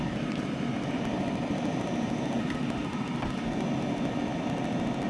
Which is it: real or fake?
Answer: real